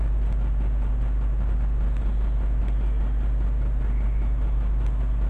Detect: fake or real real